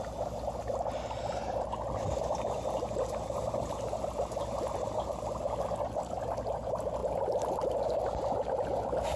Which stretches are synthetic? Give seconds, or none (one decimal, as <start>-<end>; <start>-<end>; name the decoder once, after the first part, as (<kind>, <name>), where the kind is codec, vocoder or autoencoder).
none